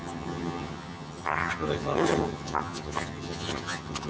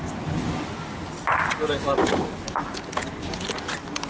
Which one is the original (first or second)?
second